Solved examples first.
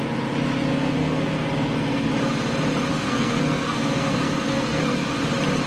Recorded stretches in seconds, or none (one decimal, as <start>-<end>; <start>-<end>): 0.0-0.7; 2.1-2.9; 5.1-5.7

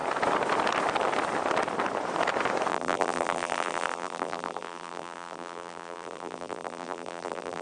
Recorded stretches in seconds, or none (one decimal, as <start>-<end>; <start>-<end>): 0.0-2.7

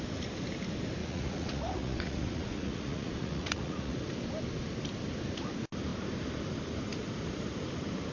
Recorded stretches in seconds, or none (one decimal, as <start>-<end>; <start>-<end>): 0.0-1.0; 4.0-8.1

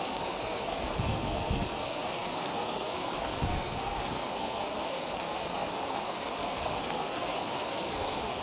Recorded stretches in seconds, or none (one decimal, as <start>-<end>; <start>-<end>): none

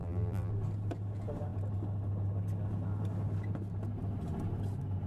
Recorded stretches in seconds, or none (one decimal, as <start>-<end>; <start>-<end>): 0.5-5.1